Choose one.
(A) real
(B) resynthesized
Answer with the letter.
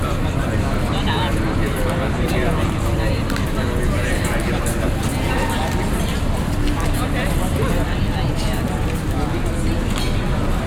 B